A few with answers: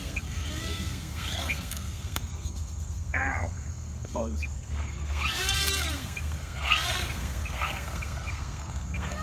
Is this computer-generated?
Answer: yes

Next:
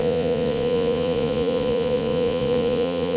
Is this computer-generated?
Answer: yes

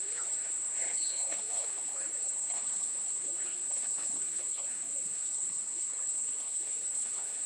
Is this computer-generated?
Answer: yes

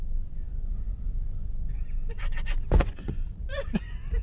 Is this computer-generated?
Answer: yes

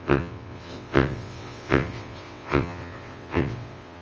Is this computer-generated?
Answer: yes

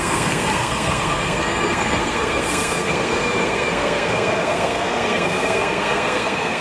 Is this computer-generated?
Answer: yes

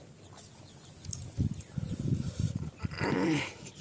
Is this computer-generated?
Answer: no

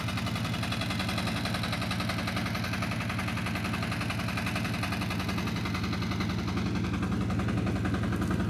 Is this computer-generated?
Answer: no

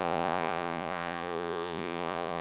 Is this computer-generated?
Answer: yes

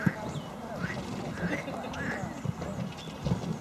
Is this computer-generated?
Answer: no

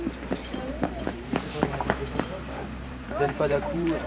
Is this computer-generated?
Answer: yes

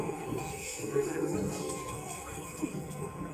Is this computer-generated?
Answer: yes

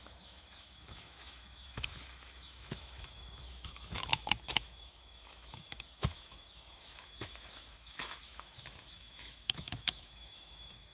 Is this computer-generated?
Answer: yes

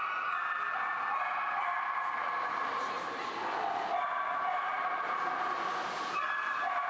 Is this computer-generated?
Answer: no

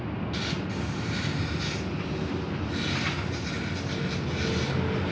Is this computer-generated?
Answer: no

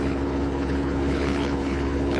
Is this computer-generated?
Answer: yes